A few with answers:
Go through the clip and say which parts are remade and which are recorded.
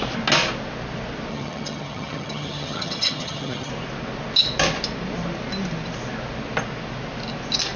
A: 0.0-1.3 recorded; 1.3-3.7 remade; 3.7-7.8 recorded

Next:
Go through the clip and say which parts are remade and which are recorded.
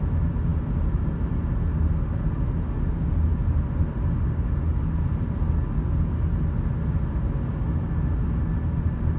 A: 0.0-9.2 recorded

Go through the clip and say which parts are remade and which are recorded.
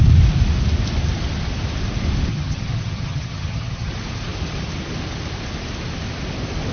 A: 0.0-2.3 recorded; 2.3-3.9 remade; 3.9-6.7 recorded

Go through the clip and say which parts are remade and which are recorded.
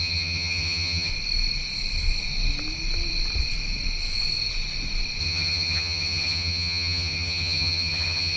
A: 0.0-1.1 remade; 1.1-5.2 recorded; 5.2-8.4 remade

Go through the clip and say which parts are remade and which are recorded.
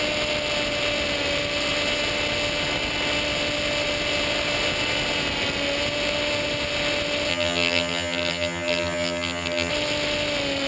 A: 0.0-7.3 recorded; 7.3-9.7 remade; 9.7-10.7 recorded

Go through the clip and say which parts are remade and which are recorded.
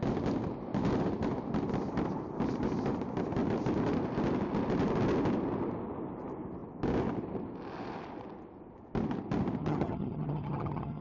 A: 0.0-9.6 recorded; 9.6-11.0 remade